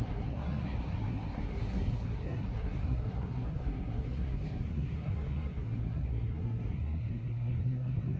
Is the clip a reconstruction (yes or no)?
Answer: yes